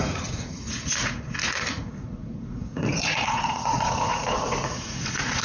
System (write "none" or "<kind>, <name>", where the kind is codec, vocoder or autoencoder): vocoder, Vocos